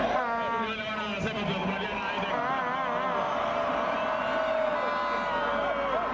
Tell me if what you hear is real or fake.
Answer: real